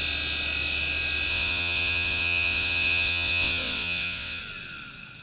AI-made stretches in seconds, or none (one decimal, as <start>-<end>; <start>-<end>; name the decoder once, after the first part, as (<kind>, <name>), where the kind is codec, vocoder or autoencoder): 1.3-4.4 (vocoder, WaveNeXt)